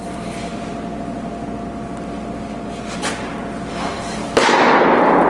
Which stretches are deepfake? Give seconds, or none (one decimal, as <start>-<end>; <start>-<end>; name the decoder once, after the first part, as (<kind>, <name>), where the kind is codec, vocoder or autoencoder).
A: 0.0-0.5 (codec, DAC); 3.7-4.2